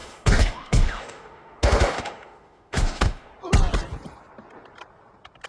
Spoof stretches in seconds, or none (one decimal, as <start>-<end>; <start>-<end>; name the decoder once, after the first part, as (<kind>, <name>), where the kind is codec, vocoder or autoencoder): 0.0-3.3 (autoencoder, DAC-VAE)